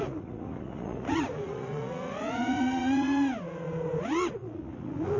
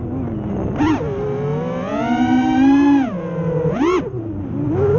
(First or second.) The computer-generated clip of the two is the first